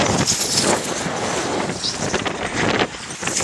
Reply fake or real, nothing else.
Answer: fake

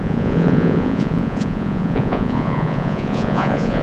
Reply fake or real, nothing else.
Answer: fake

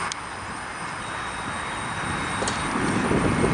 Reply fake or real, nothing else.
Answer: real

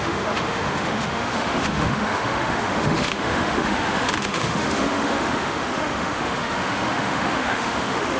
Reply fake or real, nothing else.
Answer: fake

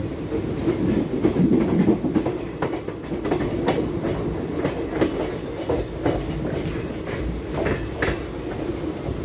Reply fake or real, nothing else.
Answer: real